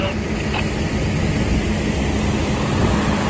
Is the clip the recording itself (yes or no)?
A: yes